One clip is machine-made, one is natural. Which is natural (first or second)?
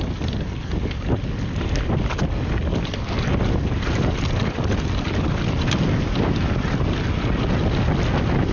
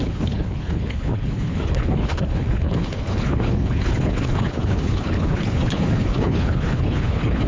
first